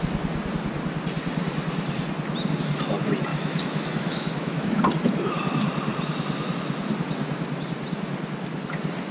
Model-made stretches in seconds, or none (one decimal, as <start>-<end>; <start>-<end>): 3.3-4.8